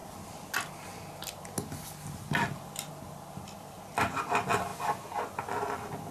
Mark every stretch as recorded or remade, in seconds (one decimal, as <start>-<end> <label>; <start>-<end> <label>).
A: 0.0-6.1 recorded